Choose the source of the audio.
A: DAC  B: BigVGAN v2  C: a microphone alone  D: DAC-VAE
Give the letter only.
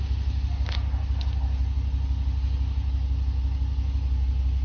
C